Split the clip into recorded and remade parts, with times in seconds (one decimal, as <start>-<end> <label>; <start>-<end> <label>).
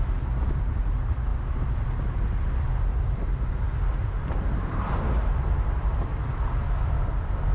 0.0-1.3 remade; 1.3-3.8 recorded; 3.8-6.1 remade; 6.1-6.8 recorded; 6.8-7.5 remade